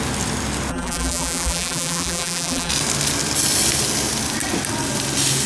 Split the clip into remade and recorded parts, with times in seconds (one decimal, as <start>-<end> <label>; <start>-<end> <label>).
0.0-0.7 recorded; 0.7-2.7 remade; 2.7-5.5 recorded